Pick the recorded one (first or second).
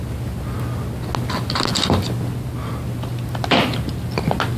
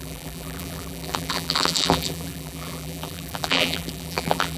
first